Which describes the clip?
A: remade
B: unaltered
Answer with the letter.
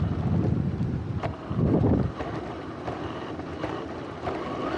B